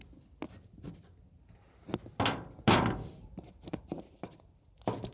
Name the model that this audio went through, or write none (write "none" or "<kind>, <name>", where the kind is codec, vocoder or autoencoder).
none